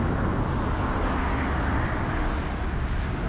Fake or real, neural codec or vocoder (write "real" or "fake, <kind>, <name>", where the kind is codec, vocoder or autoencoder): real